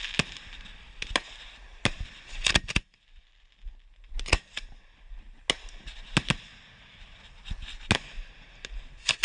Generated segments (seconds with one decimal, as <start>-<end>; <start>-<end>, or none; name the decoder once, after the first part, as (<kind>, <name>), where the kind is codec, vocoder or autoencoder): none